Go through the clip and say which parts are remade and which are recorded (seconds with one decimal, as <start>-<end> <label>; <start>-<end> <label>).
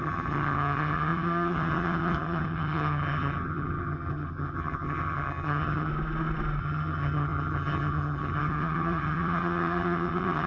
0.0-5.9 remade; 5.9-6.6 recorded; 6.6-10.5 remade